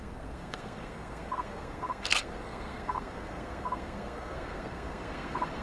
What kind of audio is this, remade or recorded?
remade